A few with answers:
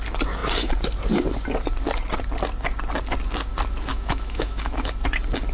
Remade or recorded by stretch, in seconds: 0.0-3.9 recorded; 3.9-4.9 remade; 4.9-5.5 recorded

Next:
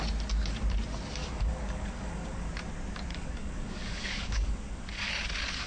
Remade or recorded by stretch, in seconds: 0.0-1.2 recorded; 1.2-2.5 remade; 2.5-3.1 recorded; 3.1-5.1 remade; 5.1-5.7 recorded